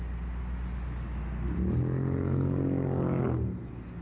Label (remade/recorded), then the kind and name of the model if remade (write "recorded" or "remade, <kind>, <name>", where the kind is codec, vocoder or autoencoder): recorded